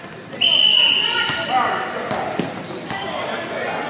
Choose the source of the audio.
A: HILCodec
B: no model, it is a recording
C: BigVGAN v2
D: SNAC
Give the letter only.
B